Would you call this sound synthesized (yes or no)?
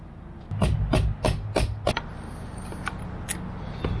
no